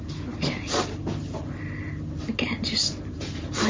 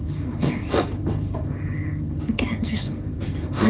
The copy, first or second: second